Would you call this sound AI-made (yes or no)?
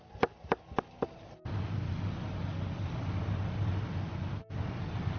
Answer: no